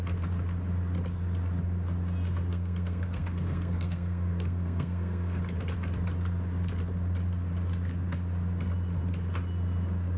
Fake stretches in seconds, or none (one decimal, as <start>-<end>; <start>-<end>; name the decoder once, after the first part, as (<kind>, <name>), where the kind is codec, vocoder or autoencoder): 2.5-5.4 (codec, SNAC)